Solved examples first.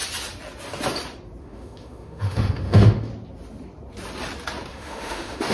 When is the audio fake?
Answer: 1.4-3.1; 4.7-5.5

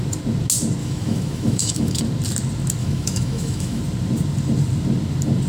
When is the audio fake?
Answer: 0.8-2.0; 2.8-3.8

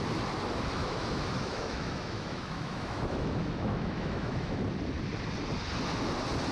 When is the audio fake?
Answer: 0.8-4.6

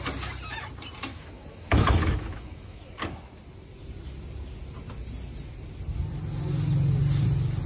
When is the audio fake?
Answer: 1.1-2.8

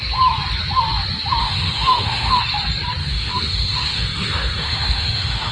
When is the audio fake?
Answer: 1.4-2.4; 3.0-5.5

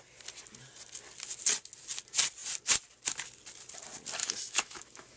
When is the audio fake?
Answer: 4.2-5.2

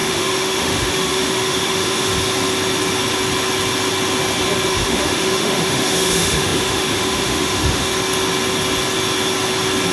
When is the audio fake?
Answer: 0.0-2.1; 4.7-7.9

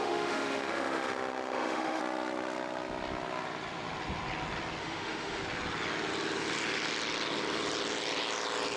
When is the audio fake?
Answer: 0.0-2.0; 4.8-5.4